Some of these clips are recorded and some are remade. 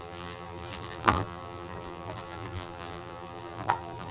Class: remade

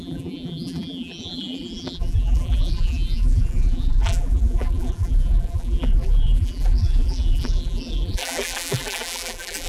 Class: remade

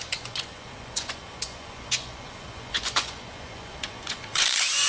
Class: remade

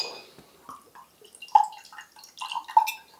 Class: recorded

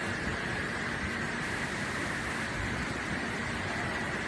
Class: recorded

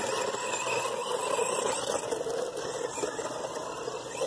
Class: recorded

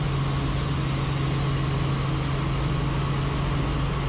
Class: recorded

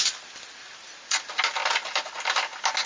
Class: recorded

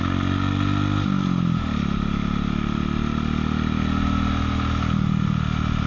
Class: recorded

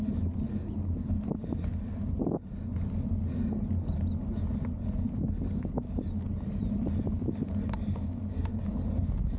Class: recorded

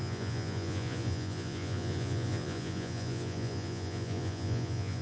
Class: remade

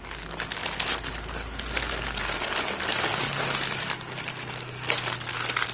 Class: recorded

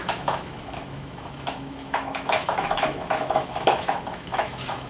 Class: remade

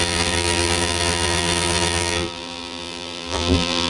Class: remade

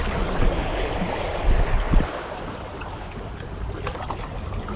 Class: recorded